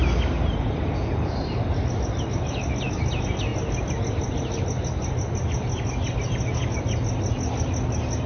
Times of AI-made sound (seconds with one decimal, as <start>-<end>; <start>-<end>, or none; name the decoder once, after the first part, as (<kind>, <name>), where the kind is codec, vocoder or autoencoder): none